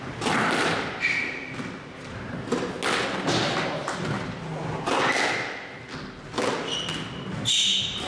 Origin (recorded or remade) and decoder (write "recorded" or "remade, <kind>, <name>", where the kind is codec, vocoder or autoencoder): recorded